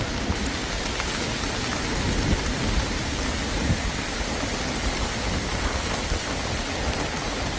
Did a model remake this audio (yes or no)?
no